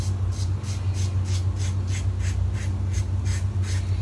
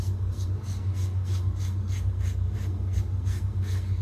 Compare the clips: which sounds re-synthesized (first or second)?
second